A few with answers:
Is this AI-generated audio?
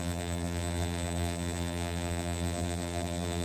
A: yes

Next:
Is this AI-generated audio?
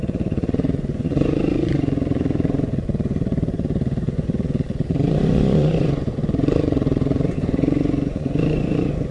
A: yes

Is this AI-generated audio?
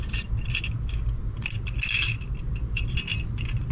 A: no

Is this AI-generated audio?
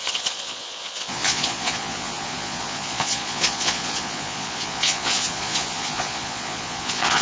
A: yes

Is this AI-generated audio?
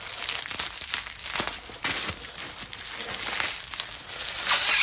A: no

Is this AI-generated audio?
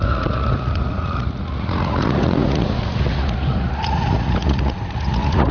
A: yes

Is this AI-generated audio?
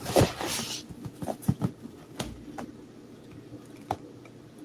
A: no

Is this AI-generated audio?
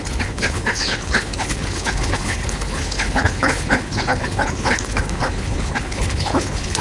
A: yes